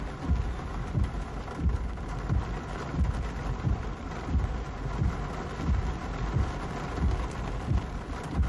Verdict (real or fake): real